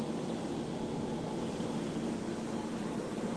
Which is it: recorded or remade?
recorded